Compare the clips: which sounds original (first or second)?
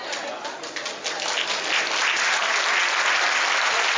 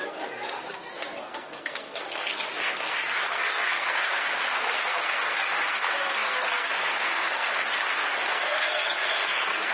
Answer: first